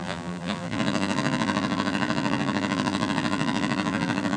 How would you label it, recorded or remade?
remade